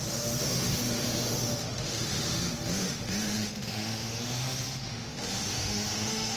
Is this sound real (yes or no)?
no